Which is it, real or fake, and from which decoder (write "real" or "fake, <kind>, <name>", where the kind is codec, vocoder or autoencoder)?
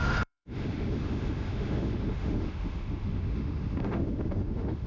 fake, autoencoder, DAC-VAE